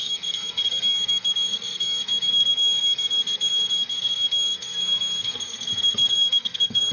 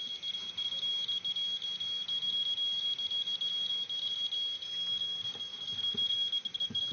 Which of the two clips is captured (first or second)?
second